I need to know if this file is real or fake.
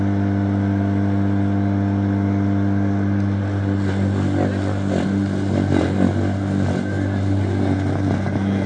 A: real